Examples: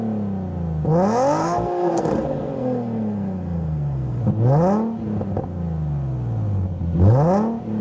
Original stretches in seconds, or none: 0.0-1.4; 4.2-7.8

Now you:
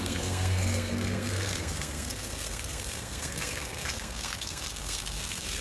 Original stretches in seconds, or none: none

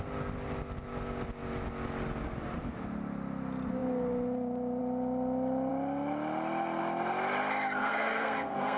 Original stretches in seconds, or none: 0.0-7.8

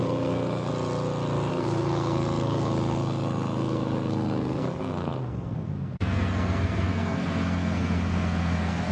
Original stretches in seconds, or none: 0.7-1.5

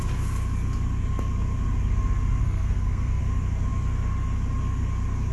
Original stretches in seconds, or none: 0.0-2.4; 3.2-5.3

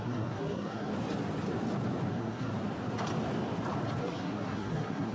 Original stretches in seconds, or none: 0.9-2.1; 2.5-4.0

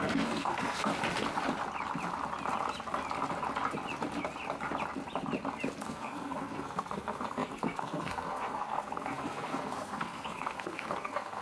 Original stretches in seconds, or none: 0.9-5.8